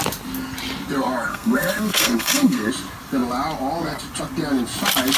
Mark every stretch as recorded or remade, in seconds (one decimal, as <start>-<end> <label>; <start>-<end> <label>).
0.0-1.3 recorded; 1.3-2.7 remade; 2.7-5.2 recorded